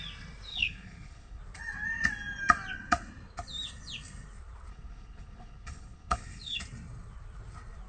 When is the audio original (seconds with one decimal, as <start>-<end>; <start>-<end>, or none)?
0.0-0.5; 1.4-4.7; 6.6-7.9